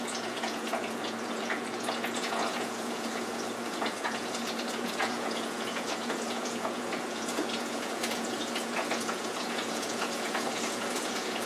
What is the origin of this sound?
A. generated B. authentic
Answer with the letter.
A